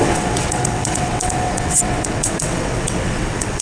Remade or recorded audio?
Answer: remade